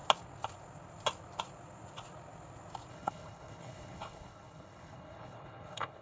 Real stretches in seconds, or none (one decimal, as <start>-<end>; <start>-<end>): 0.0-2.9